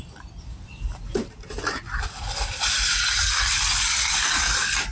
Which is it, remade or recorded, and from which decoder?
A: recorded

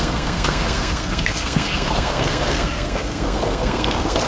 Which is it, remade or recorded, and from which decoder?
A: remade, codec, SNAC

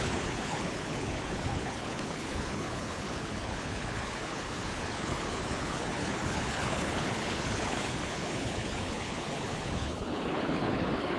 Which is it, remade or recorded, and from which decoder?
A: remade, codec, HILCodec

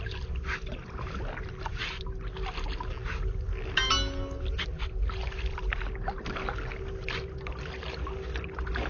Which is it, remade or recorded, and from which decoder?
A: recorded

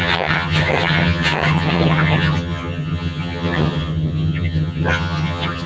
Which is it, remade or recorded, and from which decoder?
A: remade, vocoder, HiFi-GAN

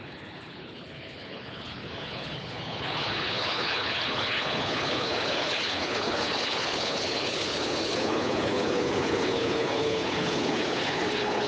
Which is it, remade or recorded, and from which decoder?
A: remade, codec, HILCodec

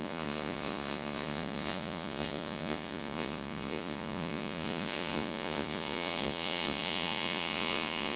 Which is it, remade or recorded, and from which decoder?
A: remade, vocoder, Vocos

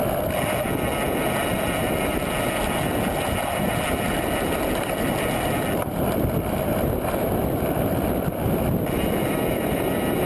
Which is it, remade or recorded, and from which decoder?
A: recorded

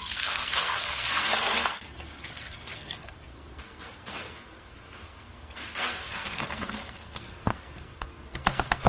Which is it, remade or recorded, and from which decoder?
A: remade, codec, SNAC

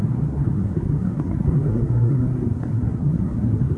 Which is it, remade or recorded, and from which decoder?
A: remade, codec, SNAC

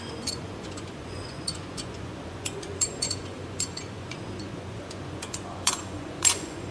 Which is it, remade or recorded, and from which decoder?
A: remade, vocoder, Vocos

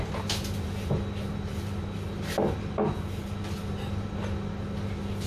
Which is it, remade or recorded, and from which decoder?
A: recorded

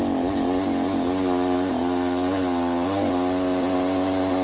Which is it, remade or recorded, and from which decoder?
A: recorded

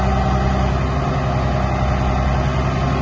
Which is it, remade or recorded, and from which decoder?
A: recorded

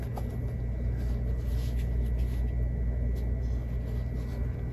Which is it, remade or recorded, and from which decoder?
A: recorded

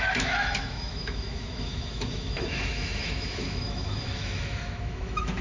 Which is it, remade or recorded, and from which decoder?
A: remade, autoencoder, DAC-VAE